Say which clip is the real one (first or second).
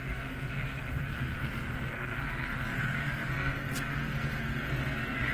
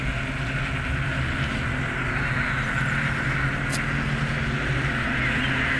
second